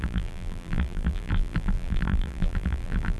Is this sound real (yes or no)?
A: no